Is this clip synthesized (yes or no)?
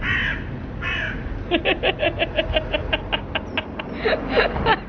no